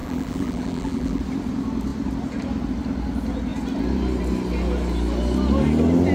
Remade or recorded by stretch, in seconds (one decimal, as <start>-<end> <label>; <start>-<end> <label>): 0.0-1.2 remade; 1.2-6.1 recorded